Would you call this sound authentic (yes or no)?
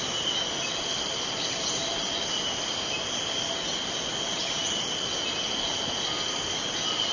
yes